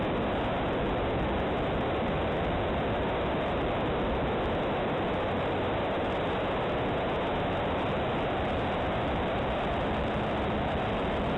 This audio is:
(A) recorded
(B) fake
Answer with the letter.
A